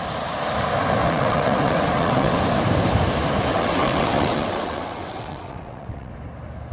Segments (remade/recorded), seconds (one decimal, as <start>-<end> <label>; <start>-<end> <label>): 0.0-1.0 recorded; 1.0-2.4 remade; 2.4-3.5 recorded; 3.5-6.1 remade; 6.1-6.7 recorded